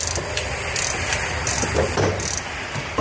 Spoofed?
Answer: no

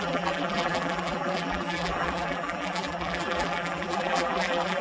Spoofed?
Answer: yes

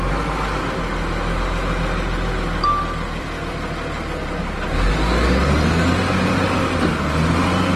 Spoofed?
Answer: no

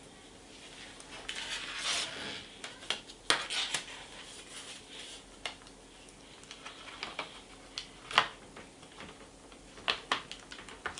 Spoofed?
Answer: no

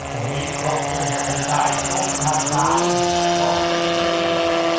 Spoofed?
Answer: no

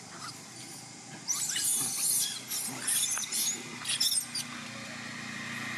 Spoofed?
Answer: no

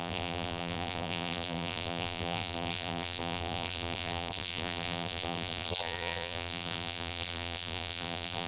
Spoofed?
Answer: yes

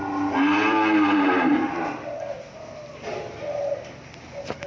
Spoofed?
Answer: yes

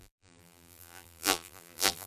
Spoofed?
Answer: yes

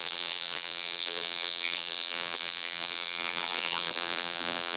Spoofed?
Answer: yes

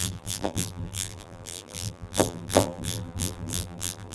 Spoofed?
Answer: yes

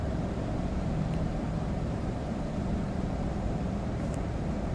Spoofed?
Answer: yes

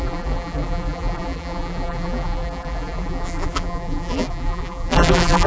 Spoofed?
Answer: yes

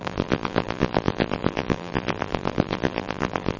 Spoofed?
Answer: yes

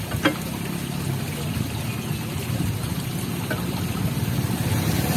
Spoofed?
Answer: no